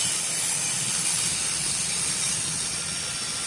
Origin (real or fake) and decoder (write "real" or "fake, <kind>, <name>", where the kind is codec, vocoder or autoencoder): real